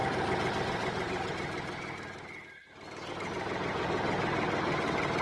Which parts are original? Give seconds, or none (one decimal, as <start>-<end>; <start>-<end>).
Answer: 0.0-5.2